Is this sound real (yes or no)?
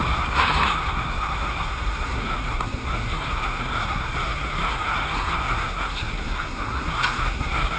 no